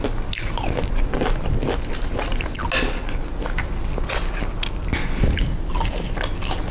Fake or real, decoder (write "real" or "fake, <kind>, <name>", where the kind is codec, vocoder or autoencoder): real